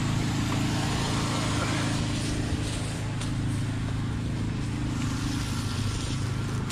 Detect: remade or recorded recorded